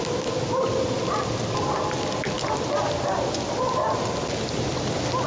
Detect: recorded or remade recorded